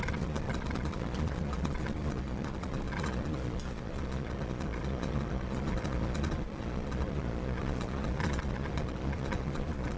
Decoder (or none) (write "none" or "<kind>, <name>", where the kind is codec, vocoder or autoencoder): vocoder, Vocos